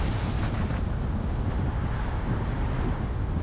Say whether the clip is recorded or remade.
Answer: recorded